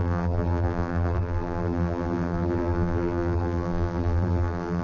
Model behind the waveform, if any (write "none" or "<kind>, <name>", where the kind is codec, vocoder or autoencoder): vocoder, BigVGAN v2